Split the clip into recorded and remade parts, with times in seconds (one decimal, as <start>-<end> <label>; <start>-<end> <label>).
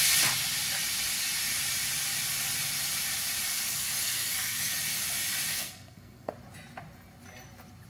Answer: 0.0-3.5 recorded; 3.5-4.7 remade; 4.7-5.5 recorded; 5.5-6.3 remade; 6.3-7.9 recorded